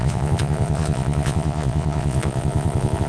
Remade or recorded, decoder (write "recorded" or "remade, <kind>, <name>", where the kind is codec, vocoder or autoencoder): remade, vocoder, Vocos